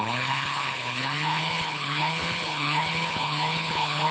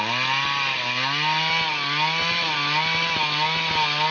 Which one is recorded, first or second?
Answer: second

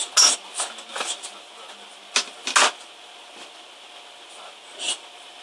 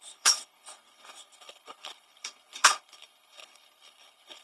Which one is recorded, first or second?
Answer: first